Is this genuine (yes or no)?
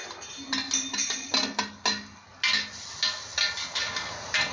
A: yes